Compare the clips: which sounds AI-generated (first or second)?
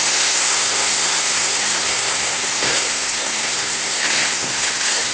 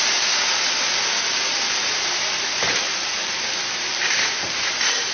first